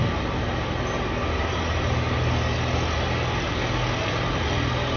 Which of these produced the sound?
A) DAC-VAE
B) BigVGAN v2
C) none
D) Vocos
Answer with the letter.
C